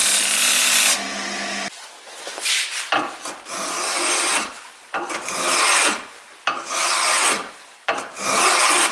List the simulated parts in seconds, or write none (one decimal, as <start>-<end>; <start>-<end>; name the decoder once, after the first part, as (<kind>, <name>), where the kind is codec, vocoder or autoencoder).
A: none